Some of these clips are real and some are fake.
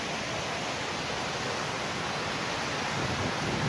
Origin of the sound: real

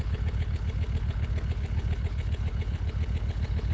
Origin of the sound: fake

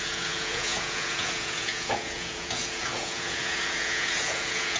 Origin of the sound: fake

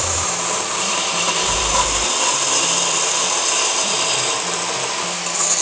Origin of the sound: fake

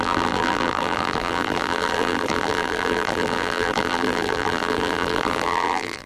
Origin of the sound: fake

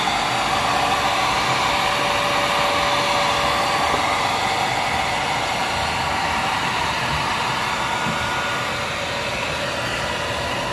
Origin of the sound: real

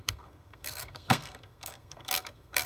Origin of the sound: fake